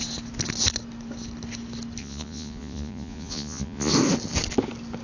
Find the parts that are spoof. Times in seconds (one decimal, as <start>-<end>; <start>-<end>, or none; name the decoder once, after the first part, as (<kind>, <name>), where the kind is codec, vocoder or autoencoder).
2.0-3.9 (vocoder, Vocos)